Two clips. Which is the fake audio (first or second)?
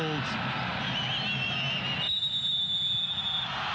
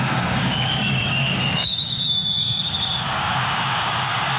second